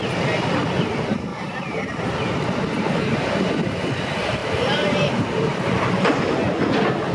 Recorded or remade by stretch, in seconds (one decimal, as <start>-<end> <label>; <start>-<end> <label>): 0.0-1.3 recorded; 1.3-2.1 remade; 2.1-4.4 recorded; 4.4-6.2 remade; 6.2-7.1 recorded